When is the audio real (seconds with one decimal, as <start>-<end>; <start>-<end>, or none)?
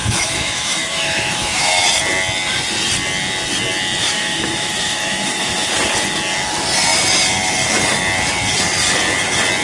1.9-4.0; 5.7-9.6